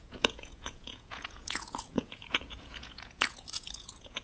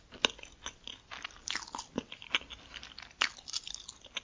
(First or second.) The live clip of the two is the second